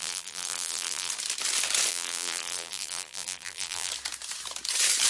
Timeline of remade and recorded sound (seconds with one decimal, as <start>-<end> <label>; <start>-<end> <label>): 0.0-1.1 remade; 1.1-1.9 recorded; 1.9-3.9 remade; 3.9-5.1 recorded